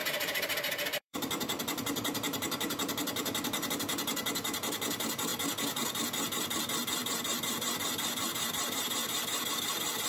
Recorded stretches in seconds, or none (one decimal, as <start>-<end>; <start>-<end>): none